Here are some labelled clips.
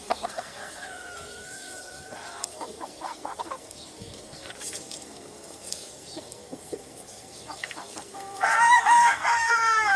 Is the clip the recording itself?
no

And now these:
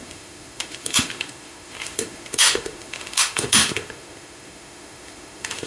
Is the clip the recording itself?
no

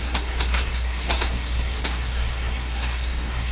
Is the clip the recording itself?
no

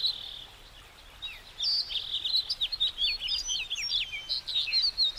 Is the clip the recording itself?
yes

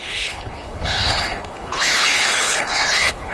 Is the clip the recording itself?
no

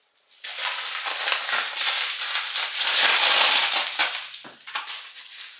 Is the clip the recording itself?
yes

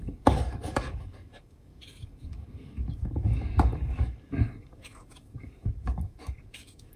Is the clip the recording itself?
no